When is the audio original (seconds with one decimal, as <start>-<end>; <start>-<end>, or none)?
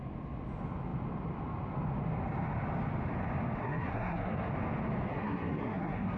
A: 0.0-3.6; 4.5-5.1